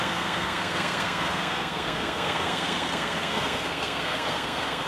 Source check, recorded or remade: remade